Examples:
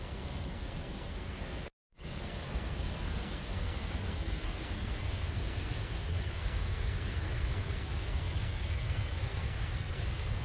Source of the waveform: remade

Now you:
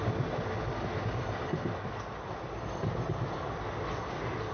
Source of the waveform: recorded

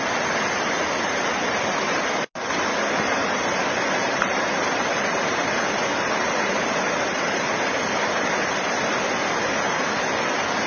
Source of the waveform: recorded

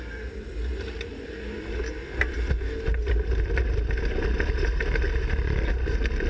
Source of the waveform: recorded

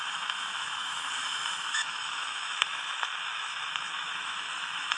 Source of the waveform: remade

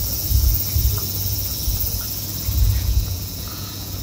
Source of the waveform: remade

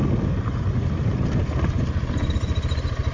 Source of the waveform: recorded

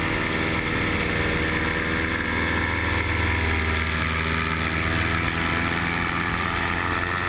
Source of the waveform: recorded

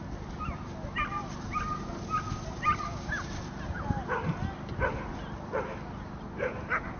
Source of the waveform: recorded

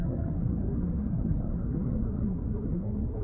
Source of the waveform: remade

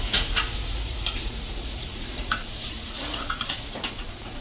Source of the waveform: remade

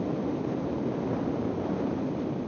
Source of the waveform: recorded